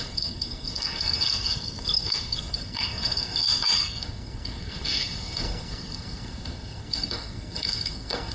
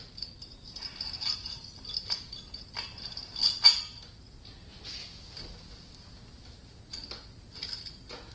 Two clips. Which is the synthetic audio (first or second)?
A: first